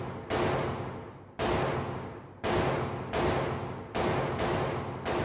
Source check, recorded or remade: recorded